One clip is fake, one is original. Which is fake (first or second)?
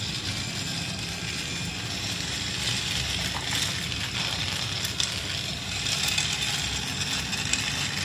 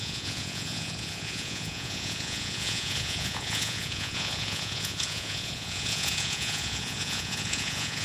second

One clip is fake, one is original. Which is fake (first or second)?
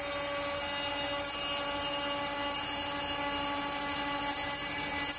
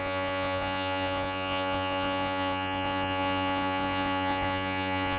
second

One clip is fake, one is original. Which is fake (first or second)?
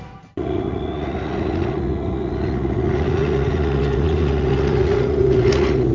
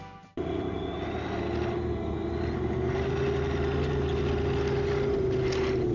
first